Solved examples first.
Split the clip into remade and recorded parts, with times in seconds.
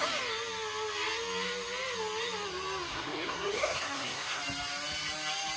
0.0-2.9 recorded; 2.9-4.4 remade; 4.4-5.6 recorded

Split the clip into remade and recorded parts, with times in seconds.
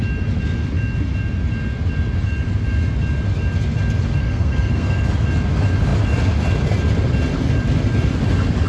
0.0-4.2 recorded; 4.2-5.0 remade; 5.0-8.7 recorded